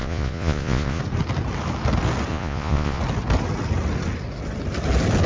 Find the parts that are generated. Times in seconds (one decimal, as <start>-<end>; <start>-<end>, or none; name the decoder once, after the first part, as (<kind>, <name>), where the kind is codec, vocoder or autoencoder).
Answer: 0.0-1.0 (vocoder, Vocos); 2.3-3.0